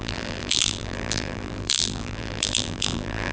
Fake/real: fake